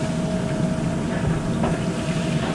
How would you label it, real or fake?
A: real